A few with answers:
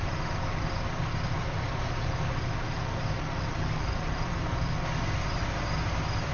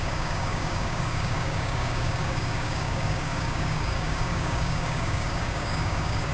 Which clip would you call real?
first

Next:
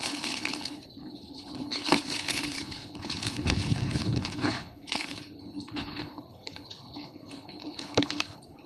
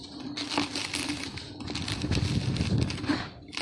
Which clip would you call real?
second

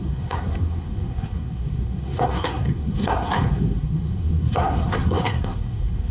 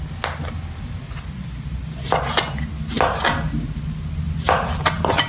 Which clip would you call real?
second